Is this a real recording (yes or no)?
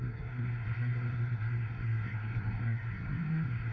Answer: no